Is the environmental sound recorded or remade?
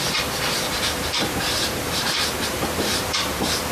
remade